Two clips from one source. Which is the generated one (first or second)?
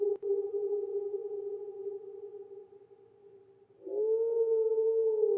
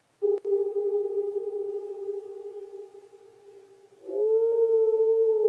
second